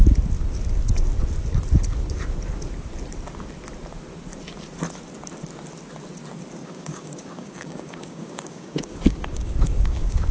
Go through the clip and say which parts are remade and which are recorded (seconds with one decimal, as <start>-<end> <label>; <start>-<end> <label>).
0.0-6.6 recorded; 6.6-10.3 remade